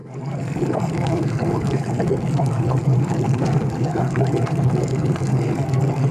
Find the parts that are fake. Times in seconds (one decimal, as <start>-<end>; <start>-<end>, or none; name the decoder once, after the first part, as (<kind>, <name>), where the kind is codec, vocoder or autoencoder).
0.0-6.1 (codec, SNAC)